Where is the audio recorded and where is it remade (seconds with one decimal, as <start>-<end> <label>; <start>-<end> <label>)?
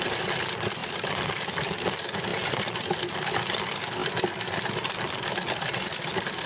0.0-6.5 recorded